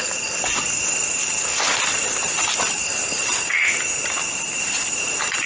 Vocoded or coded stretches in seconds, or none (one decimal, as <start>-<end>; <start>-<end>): none